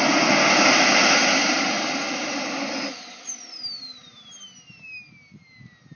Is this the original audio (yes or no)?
yes